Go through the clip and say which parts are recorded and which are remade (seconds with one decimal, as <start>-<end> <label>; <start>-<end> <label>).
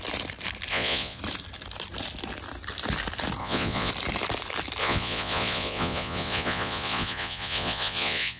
0.0-0.7 recorded; 0.7-1.2 remade; 1.2-3.4 recorded; 3.4-3.9 remade; 3.9-4.8 recorded; 4.8-8.4 remade